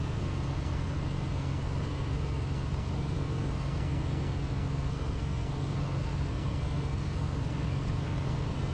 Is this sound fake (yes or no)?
yes